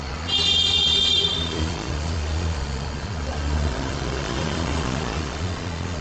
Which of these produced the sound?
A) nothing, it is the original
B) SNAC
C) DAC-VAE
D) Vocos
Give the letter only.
D